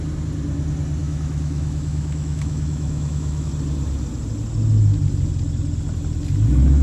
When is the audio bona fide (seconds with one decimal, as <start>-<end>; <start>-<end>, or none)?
0.0-1.0; 3.5-6.8